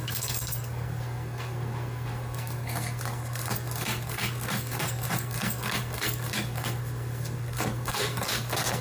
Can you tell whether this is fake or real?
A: fake